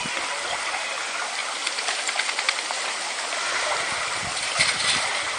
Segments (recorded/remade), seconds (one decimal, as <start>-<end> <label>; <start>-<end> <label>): 0.0-5.4 recorded